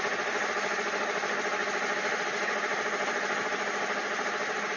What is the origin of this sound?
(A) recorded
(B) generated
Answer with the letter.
A